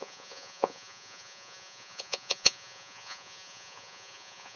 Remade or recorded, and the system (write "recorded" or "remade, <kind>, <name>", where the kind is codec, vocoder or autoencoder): remade, vocoder, Vocos